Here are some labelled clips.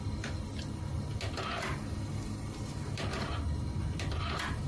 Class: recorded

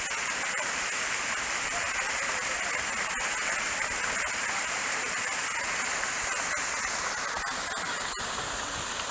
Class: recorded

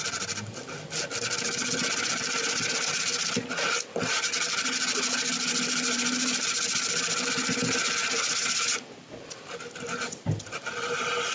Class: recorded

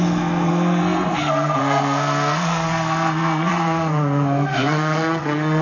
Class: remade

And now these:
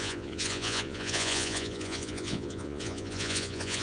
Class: remade